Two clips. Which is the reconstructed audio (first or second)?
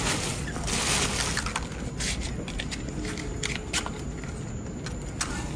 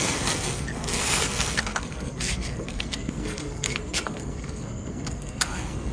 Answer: second